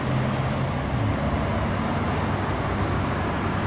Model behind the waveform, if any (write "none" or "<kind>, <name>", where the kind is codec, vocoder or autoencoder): none